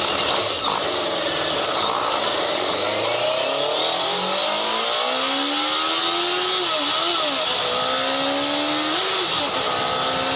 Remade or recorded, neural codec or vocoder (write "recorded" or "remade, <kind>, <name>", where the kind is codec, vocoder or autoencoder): recorded